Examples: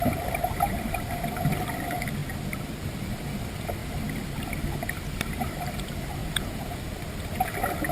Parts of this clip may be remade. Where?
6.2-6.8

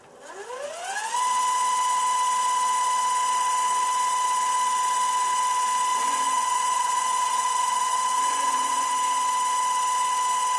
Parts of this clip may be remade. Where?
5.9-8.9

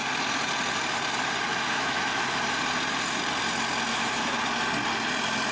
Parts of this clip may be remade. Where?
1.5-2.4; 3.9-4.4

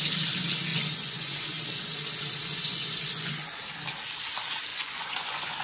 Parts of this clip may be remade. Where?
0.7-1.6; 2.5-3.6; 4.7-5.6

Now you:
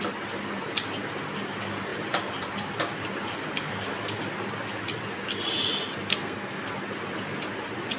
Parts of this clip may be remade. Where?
6.1-6.6

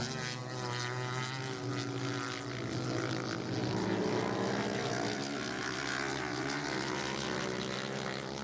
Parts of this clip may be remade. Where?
none

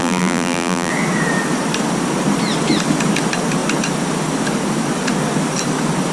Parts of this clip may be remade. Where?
0.0-0.9